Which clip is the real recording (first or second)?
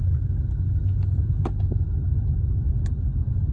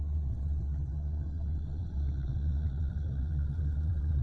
first